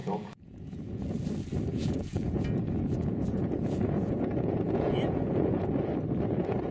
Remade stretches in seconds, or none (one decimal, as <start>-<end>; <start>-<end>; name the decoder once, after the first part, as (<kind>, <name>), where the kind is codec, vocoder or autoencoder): 0.0-1.0 (vocoder, Vocos); 1.7-5.7